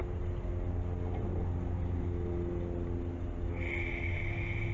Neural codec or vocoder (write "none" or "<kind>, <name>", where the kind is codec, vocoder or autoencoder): none